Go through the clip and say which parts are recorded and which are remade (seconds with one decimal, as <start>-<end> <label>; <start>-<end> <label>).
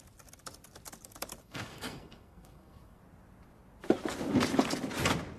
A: 0.0-1.4 recorded; 1.4-3.0 remade; 3.0-5.4 recorded